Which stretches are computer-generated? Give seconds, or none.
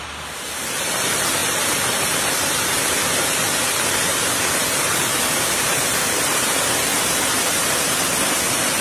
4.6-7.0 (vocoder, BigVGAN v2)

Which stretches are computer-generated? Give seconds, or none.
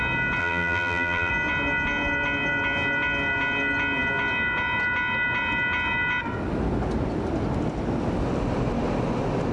0.4-1.3 (vocoder, BigVGAN v2)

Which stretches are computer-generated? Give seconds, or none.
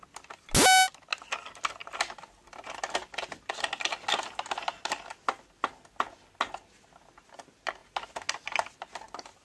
none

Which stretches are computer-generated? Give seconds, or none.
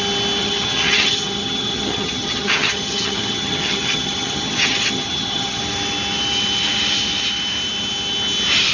0.4-5.6 (vocoder, HiFi-GAN)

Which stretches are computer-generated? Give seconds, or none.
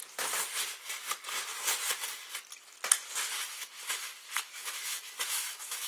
3.5-5.9 (autoencoder, DAC-VAE)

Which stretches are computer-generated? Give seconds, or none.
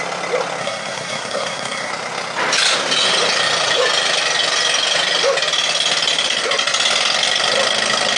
0.6-1.9 (codec, SNAC)